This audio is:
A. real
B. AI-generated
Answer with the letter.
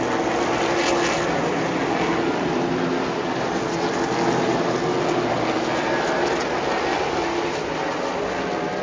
A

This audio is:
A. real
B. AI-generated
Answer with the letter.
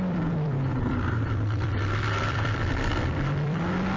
B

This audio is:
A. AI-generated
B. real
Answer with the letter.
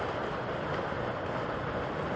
A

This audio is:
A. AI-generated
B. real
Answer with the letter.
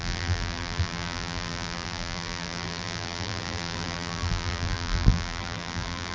A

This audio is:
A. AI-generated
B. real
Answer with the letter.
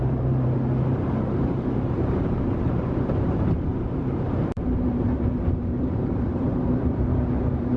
A